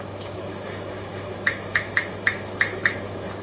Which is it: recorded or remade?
remade